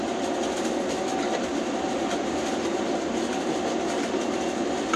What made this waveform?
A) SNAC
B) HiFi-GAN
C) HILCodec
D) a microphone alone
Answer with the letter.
D